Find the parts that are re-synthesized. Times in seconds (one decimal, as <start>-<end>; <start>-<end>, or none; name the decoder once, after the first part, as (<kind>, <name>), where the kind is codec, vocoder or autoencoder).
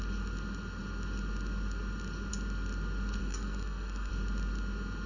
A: 3.2-4.1 (codec, SNAC)